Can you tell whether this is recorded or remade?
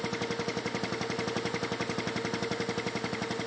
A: recorded